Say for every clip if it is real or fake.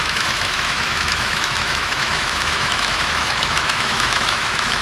fake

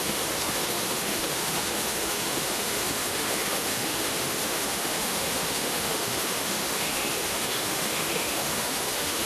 fake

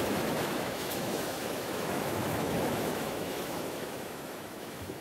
fake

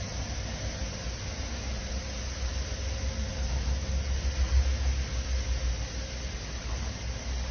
real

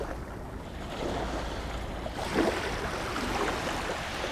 real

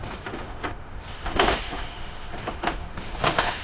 fake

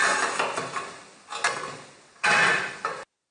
real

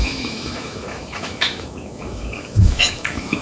fake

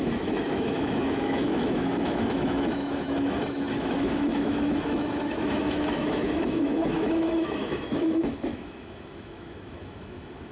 fake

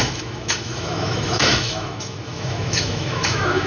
fake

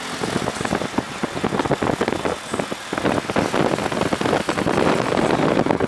real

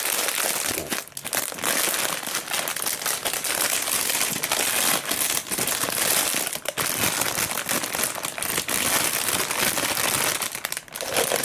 real